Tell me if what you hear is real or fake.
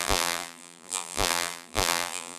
fake